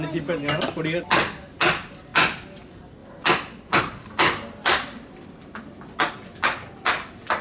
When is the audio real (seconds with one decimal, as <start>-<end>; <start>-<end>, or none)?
0.0-7.4